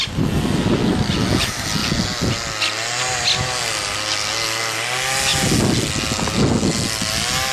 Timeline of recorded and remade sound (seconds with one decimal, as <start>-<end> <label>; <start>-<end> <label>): 0.0-7.5 recorded